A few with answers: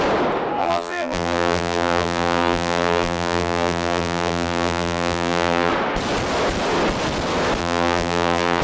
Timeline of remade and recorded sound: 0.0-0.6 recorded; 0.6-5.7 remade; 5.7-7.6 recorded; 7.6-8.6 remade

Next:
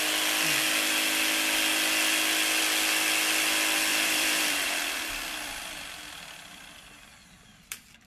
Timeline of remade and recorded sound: 0.0-3.9 recorded; 3.9-8.1 remade

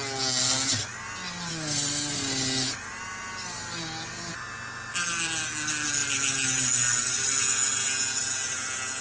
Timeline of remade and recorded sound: 0.0-9.0 recorded